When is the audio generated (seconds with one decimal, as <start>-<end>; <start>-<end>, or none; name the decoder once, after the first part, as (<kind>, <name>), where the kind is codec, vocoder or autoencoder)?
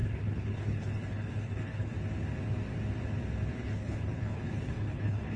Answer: 0.0-1.9 (codec, HILCodec); 3.5-5.4